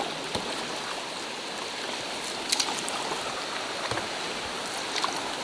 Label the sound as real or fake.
real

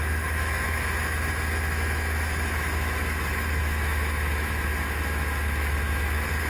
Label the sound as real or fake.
fake